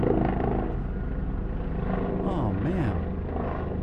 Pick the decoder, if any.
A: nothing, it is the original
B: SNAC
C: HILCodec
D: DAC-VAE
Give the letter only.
A